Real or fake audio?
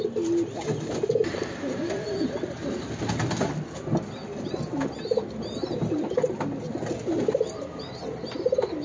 real